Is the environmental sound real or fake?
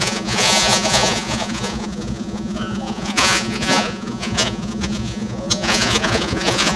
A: fake